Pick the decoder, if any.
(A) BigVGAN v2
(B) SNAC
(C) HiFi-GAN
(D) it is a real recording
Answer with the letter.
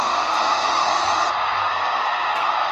B